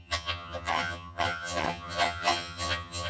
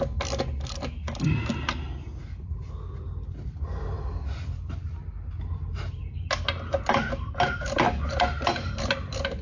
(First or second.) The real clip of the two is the second